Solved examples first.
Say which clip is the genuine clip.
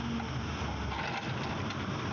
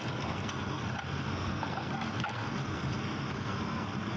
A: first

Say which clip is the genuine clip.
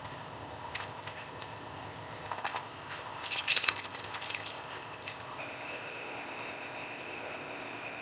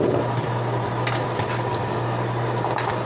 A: second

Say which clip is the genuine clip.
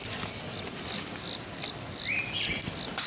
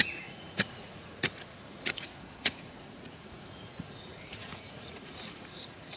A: first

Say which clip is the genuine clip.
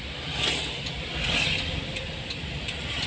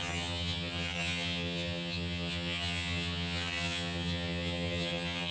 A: first